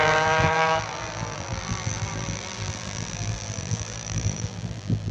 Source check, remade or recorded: remade